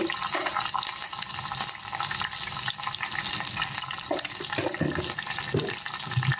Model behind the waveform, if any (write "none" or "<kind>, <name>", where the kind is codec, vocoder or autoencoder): none